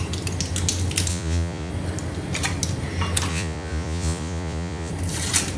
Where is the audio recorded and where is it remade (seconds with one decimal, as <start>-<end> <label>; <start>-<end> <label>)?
0.0-1.1 recorded; 1.1-1.7 remade; 1.7-3.3 recorded; 3.3-4.9 remade; 4.9-5.6 recorded

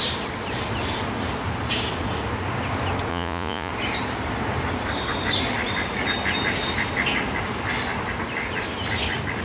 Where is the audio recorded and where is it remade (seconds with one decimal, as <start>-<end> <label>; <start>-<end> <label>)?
0.0-3.1 recorded; 3.1-3.7 remade; 3.7-9.4 recorded

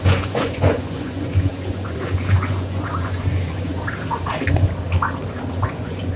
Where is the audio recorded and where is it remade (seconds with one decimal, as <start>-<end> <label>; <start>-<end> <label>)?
0.0-3.7 remade; 3.7-5.5 recorded; 5.5-6.2 remade

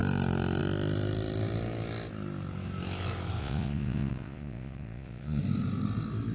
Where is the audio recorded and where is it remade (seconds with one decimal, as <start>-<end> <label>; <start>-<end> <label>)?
0.0-3.4 recorded; 3.4-5.4 remade; 5.4-6.3 recorded